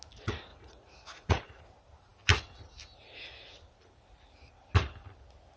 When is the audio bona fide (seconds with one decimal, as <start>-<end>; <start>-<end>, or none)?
0.0-0.5; 1.6-5.6